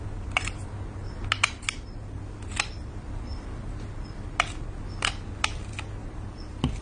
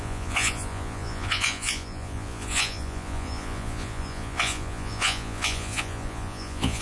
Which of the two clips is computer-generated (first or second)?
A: second